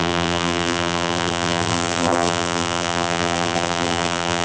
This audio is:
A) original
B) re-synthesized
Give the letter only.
B